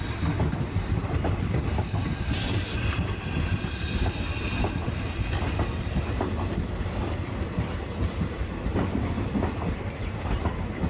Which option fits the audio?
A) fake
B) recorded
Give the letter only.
A